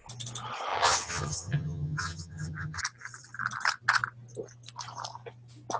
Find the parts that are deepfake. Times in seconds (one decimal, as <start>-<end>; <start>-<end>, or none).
0.7-2.8